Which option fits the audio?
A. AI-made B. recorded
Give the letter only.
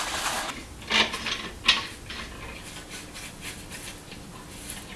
B